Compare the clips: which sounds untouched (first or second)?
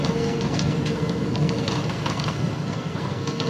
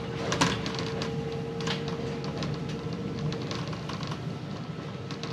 second